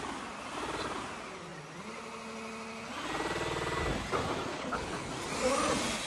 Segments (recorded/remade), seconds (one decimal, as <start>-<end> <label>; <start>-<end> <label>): 0.0-4.5 recorded; 4.5-5.1 remade; 5.1-6.1 recorded